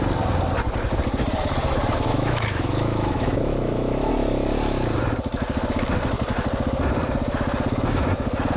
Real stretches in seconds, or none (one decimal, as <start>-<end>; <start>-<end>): 0.0-2.1; 4.1-8.6